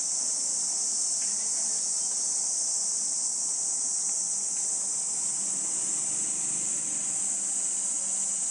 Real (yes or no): yes